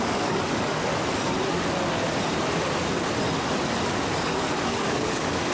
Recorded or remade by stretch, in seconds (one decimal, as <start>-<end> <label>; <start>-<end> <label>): 0.0-0.9 remade; 0.9-4.2 recorded; 4.2-5.5 remade